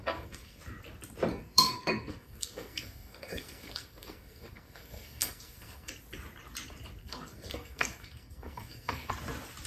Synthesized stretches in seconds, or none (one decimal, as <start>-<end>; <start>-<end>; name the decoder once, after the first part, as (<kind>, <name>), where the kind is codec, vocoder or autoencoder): 0.0-0.6 (codec, SNAC); 1.3-5.9; 7.0-9.1